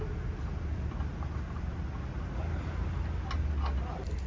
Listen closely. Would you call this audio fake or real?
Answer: real